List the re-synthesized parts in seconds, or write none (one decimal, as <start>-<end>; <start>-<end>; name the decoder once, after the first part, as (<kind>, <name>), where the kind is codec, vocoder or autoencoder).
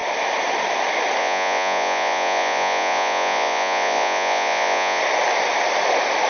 1.2-5.0 (vocoder, Vocos)